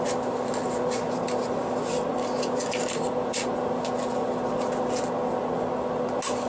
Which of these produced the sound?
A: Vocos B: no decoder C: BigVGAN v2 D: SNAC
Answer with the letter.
B